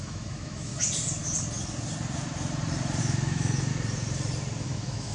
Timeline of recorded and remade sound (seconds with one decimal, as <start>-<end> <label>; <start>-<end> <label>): 0.0-0.7 remade; 0.7-3.0 recorded; 3.0-3.7 remade; 3.7-4.6 recorded; 4.6-5.1 remade